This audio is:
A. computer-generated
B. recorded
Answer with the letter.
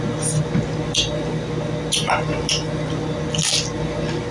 B